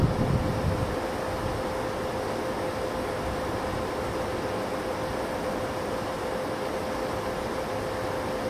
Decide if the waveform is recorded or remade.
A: recorded